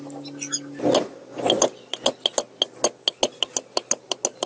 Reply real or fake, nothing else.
real